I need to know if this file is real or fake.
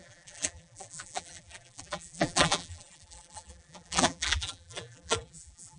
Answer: fake